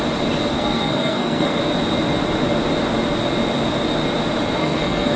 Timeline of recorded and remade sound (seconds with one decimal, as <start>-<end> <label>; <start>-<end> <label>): 0.0-0.5 recorded; 0.5-1.6 remade; 1.6-4.6 recorded; 4.6-5.2 remade